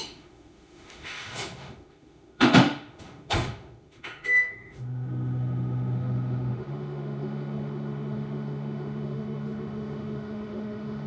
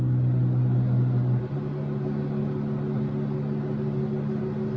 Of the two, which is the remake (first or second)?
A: first